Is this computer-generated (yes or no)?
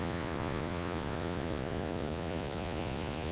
yes